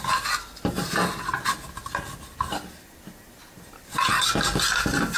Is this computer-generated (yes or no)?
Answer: no